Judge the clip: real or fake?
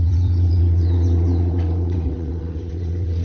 fake